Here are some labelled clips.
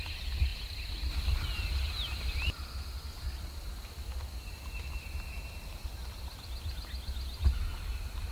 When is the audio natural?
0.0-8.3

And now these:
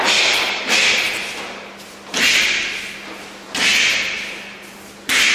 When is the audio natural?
0.0-5.3

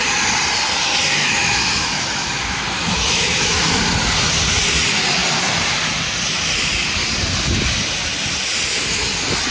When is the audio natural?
0.0-1.2; 3.8-9.5

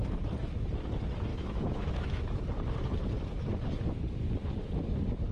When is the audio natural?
0.0-1.3; 2.4-5.3

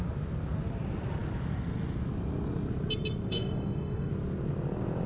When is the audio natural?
0.0-3.3; 4.1-5.1

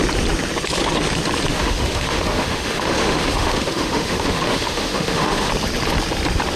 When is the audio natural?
0.0-1.5; 5.5-6.6

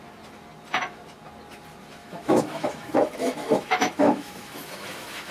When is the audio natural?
0.0-2.0